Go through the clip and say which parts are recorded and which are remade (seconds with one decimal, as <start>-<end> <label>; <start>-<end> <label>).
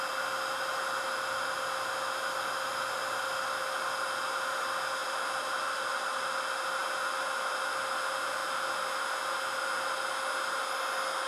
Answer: 0.0-11.3 recorded